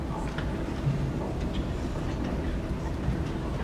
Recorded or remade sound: recorded